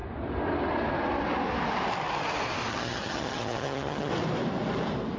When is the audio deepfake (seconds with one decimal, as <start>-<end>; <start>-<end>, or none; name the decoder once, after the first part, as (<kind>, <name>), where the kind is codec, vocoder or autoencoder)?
2.7-4.1 (vocoder, HiFi-GAN)